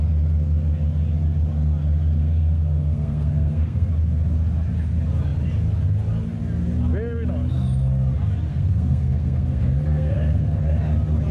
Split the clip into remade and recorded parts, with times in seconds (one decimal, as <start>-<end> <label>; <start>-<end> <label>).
0.0-2.2 recorded; 2.2-3.9 remade; 3.9-8.5 recorded; 8.5-10.6 remade; 10.6-11.3 recorded